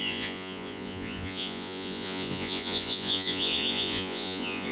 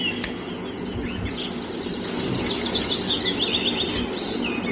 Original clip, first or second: second